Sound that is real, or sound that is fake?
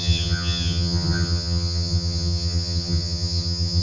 fake